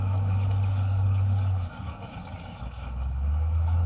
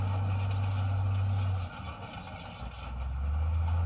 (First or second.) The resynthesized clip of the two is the first